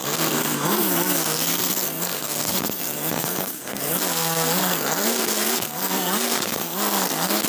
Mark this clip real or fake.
fake